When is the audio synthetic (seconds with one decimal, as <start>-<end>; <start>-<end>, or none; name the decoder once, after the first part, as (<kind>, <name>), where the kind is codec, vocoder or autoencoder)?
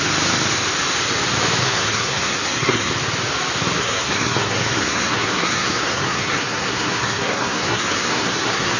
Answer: 1.6-2.9 (codec, SNAC); 3.8-8.8